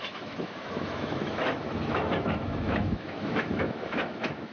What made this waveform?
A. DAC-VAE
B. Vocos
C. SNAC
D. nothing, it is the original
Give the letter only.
A